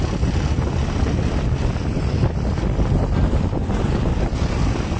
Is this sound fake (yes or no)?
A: no